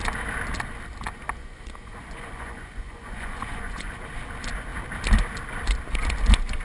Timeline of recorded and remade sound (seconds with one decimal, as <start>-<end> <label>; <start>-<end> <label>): 0.0-1.4 recorded; 1.4-4.0 remade; 4.0-6.6 recorded